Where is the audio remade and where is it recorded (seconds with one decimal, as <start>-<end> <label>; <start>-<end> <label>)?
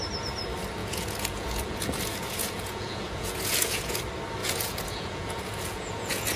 0.0-0.8 recorded; 0.8-4.0 remade; 4.0-4.4 recorded; 4.4-6.4 remade